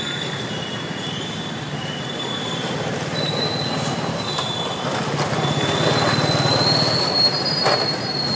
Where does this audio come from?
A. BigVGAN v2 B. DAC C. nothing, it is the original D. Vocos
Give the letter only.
C